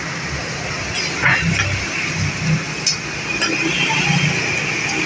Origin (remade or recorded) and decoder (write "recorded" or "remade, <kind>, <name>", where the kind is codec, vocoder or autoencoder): recorded